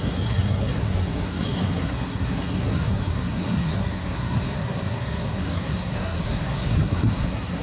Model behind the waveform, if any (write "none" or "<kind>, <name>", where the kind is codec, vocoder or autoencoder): codec, SNAC